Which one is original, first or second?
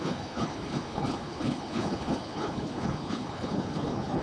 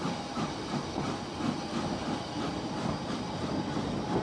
second